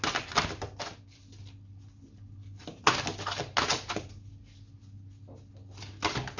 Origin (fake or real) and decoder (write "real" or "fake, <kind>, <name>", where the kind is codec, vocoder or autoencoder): real